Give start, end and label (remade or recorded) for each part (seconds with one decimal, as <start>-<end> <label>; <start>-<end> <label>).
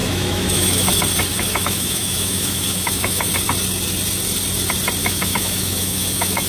0.0-0.9 remade; 0.9-1.3 recorded; 1.3-3.3 remade; 3.3-5.0 recorded; 5.0-6.5 remade